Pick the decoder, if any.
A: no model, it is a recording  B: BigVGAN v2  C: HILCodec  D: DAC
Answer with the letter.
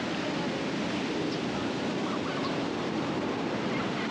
A